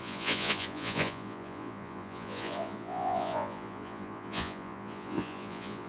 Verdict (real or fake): fake